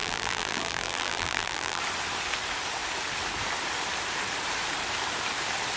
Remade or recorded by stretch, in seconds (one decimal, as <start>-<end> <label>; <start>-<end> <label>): 0.0-1.8 remade; 1.8-5.8 recorded